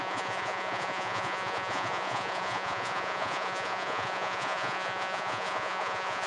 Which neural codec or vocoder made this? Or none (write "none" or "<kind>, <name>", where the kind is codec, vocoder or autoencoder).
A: vocoder, Vocos